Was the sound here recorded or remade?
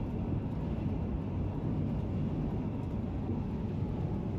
recorded